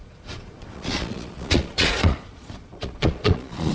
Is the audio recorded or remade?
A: remade